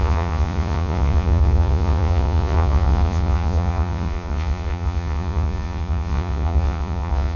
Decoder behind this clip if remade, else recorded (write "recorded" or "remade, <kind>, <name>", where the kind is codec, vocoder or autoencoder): remade, vocoder, Vocos